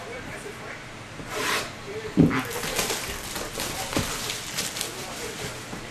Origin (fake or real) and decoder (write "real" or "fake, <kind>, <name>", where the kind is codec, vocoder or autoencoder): fake, vocoder, BigVGAN v2